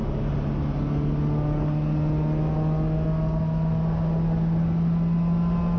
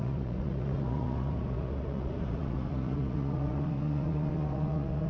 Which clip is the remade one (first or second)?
second